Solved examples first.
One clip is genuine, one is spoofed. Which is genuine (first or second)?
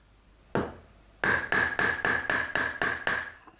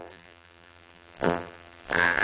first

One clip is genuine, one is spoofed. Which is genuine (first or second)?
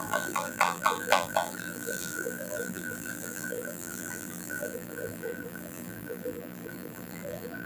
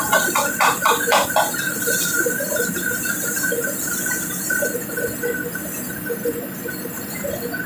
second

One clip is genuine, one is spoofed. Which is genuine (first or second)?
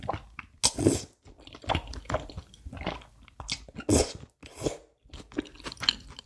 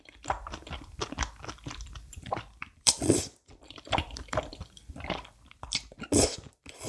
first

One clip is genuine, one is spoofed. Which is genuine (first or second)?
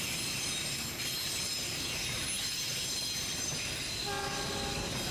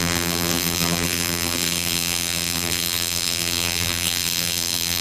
first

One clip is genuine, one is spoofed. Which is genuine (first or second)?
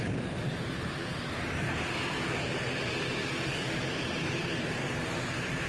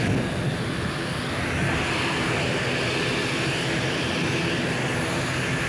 second